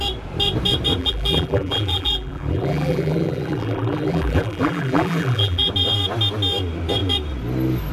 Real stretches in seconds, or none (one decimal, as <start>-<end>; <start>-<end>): 0.0-1.0; 5.7-7.9